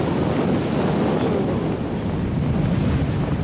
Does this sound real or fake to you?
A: real